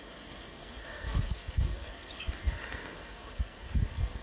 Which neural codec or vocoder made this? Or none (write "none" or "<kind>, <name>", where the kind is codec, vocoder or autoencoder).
codec, SNAC